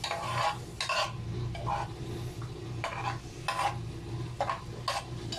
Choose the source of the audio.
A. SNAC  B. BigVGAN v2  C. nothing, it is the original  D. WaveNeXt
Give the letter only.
C